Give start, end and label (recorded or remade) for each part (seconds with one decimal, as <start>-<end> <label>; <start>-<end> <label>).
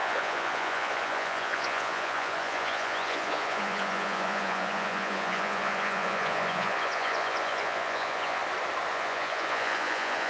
0.0-8.4 remade; 8.4-8.9 recorded; 8.9-10.3 remade